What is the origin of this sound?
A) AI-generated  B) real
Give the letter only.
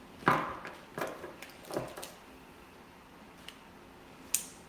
B